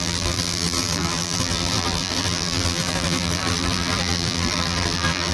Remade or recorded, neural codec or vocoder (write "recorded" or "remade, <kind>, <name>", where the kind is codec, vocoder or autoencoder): remade, vocoder, BigVGAN v2